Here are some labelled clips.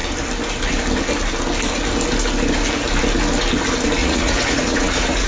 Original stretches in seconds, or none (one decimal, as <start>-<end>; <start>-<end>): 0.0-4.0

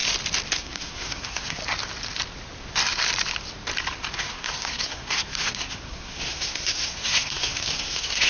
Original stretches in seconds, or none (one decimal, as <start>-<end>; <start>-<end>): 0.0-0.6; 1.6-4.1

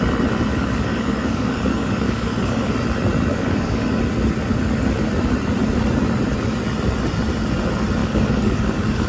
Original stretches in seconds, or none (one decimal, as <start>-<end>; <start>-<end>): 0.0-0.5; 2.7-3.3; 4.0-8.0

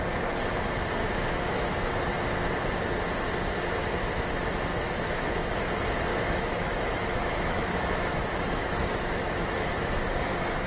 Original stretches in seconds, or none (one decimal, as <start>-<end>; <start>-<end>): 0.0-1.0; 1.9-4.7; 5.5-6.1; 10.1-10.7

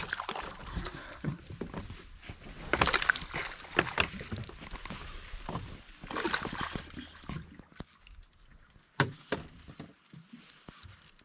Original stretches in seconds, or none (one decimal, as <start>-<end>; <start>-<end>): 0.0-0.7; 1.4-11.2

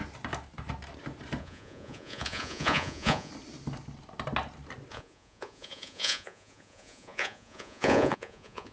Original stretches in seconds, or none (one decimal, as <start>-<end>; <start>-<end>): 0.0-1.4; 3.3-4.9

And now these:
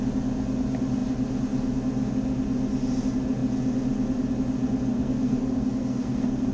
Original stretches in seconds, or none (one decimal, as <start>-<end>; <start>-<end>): 0.0-4.9

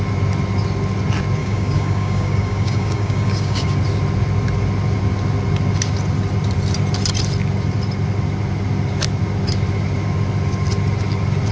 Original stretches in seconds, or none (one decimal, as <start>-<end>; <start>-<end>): 0.0-1.4; 3.8-11.5